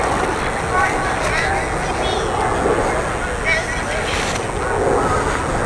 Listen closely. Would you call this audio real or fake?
real